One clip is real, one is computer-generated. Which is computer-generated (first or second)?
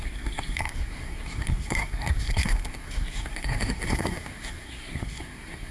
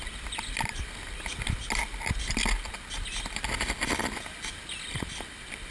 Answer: first